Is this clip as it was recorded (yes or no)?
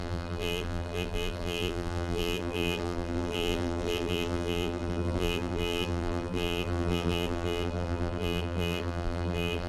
no